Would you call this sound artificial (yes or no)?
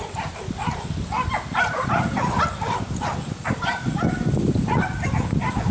no